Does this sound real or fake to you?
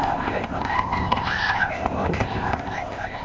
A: fake